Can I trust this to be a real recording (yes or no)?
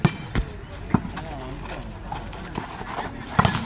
yes